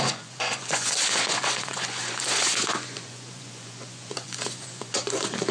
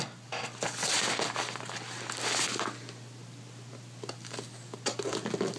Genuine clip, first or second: second